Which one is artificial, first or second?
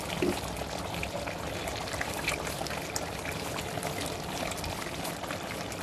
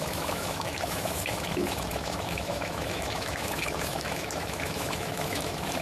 second